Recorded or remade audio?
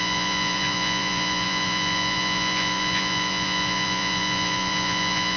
remade